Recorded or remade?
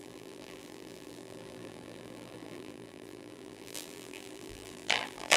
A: remade